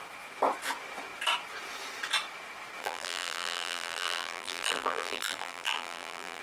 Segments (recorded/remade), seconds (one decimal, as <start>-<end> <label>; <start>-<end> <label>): 0.0-2.8 recorded; 2.8-6.4 remade